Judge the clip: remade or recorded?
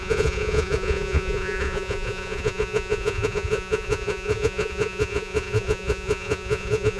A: remade